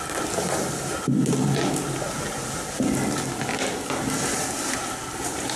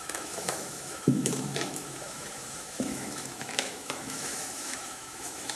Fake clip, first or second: second